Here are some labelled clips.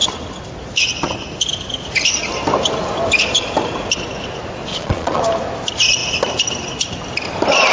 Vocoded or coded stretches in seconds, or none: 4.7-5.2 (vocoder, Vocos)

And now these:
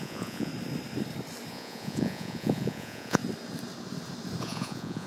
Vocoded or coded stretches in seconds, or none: 0.0-0.5 (vocoder, Vocos); 1.5-3.2; 4.4-5.1

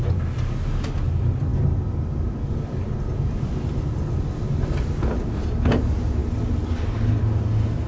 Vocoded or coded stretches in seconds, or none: none